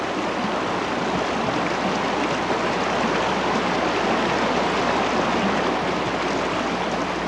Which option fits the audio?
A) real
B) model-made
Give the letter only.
A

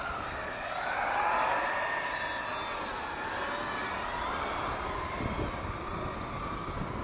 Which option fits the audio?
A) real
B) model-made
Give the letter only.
A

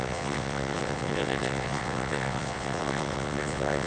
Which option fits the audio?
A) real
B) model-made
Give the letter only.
B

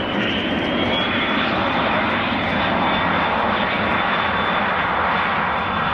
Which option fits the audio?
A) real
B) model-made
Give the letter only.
A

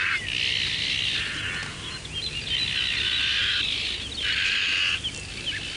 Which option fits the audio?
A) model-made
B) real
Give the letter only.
B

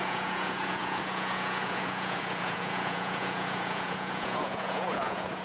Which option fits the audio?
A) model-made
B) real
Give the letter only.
A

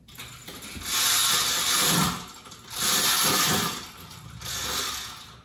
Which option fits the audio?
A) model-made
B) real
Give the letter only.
B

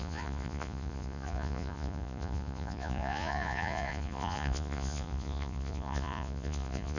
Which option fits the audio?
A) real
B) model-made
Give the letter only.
B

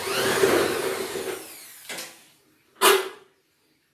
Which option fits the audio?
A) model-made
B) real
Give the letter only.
B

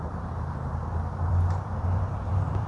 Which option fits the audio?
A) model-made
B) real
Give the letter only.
A